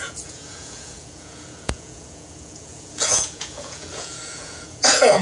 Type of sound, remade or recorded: remade